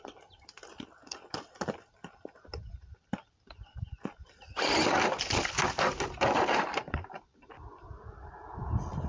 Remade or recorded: recorded